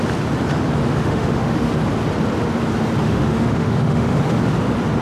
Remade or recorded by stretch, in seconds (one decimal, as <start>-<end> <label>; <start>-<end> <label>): 0.0-1.0 recorded; 1.0-1.7 remade; 1.7-3.0 recorded; 3.0-4.2 remade; 4.2-5.0 recorded